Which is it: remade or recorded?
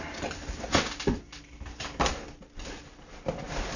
recorded